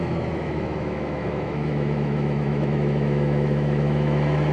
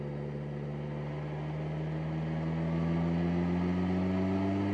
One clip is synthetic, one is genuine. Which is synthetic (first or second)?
first